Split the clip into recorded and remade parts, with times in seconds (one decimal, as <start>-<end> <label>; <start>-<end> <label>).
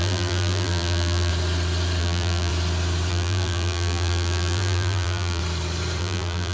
0.0-1.3 remade; 1.3-2.0 recorded; 2.0-2.5 remade; 2.5-3.1 recorded; 3.1-5.4 remade; 5.4-6.0 recorded; 6.0-6.5 remade